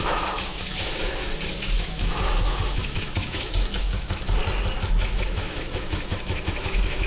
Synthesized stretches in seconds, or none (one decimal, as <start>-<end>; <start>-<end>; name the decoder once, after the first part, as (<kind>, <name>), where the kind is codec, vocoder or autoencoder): 0.0-1.2 (autoencoder, DAC-VAE); 1.8-4.4; 5.1-7.1